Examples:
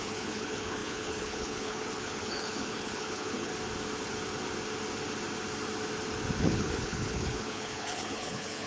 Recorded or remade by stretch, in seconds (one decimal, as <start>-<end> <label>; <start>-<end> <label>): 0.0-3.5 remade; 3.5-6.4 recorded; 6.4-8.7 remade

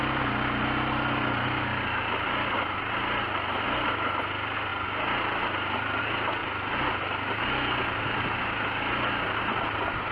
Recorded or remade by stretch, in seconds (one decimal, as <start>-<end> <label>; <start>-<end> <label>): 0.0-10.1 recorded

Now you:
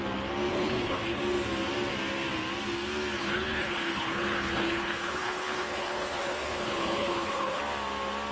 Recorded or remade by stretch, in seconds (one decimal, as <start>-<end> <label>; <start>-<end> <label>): 0.0-0.5 recorded; 0.5-1.2 remade; 1.2-3.2 recorded; 3.2-7.6 remade; 7.6-8.3 recorded

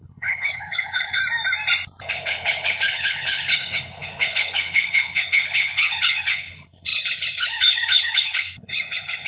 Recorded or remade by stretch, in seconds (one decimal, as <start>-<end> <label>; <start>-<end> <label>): 0.0-1.2 remade; 1.2-2.1 recorded; 2.1-9.3 remade

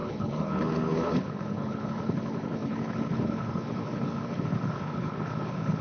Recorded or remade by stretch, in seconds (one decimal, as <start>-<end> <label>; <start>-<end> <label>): 0.0-5.8 remade